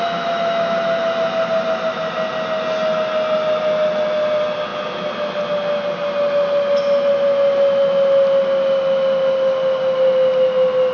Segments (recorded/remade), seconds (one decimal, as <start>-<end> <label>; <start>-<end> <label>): 0.0-10.9 recorded